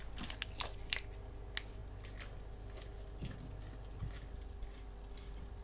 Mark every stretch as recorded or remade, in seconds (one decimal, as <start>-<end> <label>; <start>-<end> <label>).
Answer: 0.0-5.6 recorded